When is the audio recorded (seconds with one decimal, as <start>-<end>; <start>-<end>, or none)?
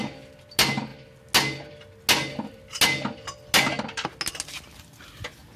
0.0-5.6